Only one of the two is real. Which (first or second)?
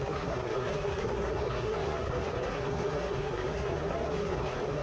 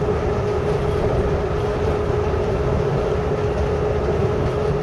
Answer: second